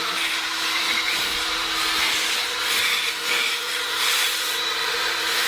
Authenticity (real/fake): fake